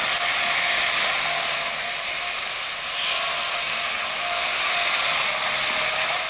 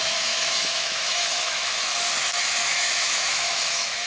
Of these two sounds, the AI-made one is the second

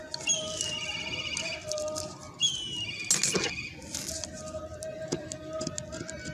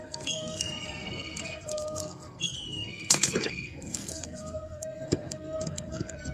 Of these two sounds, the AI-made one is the second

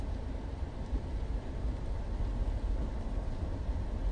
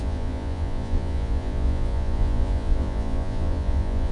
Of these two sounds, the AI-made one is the second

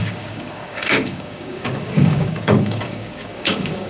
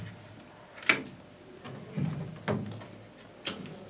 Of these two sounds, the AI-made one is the first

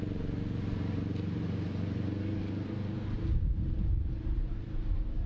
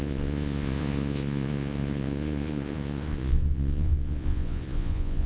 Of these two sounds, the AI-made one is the second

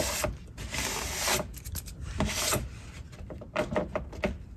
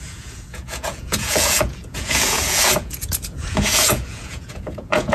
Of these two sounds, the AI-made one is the second